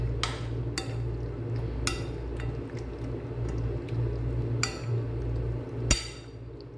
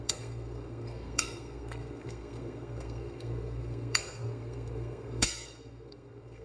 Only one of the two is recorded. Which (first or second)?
first